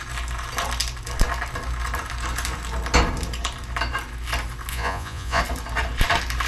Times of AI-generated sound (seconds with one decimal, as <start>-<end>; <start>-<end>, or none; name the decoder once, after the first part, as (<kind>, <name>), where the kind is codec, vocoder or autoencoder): 4.7-5.4 (vocoder, Vocos)

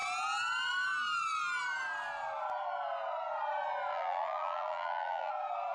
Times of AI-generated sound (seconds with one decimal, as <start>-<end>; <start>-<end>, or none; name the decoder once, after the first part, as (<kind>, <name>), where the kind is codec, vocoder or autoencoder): 3.9-5.3 (vocoder, BigVGAN v2)

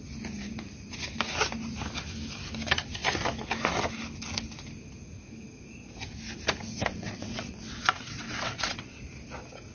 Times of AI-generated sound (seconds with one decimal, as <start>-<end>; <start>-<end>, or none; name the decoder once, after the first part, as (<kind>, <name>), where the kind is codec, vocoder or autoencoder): 6.9-9.0 (vocoder, WaveNeXt)

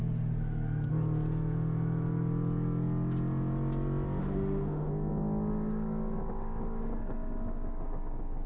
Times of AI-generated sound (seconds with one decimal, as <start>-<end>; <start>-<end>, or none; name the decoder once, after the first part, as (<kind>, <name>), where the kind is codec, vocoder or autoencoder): 4.2-4.9 (autoencoder, DAC-VAE)

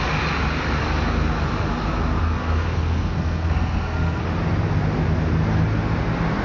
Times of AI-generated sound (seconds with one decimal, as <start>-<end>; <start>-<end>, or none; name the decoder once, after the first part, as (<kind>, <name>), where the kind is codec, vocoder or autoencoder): 2.2-4.2 (codec, SNAC)

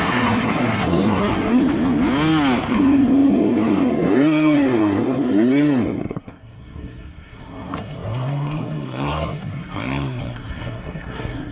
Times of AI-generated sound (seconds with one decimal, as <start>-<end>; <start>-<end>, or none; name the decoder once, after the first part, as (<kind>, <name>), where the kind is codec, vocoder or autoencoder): 0.0-1.6 (codec, SNAC); 2.7-11.5